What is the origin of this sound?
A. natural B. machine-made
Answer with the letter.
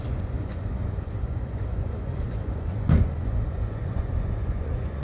B